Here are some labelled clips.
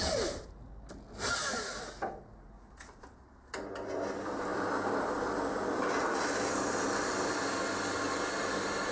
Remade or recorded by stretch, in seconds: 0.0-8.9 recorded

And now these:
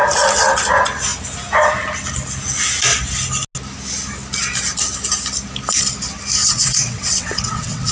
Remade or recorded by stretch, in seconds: 0.0-6.4 recorded; 6.4-7.9 remade

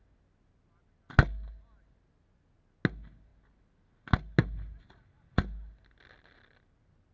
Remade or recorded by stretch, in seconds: 0.0-7.1 recorded

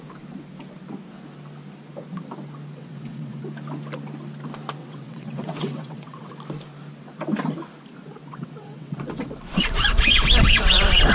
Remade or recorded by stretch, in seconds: 0.0-2.8 recorded; 2.8-3.4 remade; 3.4-4.8 recorded; 4.8-6.3 remade; 6.3-8.3 recorded; 8.3-11.1 remade

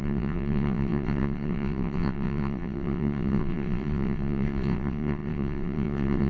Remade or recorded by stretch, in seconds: 0.0-6.3 remade

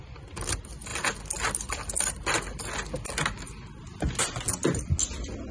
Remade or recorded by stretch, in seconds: 0.0-5.5 recorded